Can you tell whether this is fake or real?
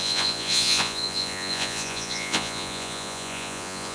fake